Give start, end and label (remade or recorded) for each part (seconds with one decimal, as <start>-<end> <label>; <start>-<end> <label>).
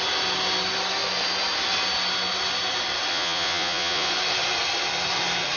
0.0-3.1 recorded; 3.1-4.1 remade; 4.1-5.6 recorded